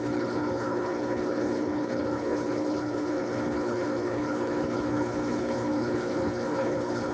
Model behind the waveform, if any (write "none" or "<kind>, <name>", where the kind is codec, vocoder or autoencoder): codec, HILCodec